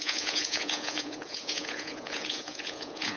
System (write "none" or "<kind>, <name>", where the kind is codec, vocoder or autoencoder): vocoder, Vocos